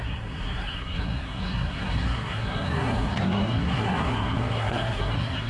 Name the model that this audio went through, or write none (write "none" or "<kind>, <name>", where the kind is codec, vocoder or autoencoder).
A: codec, SNAC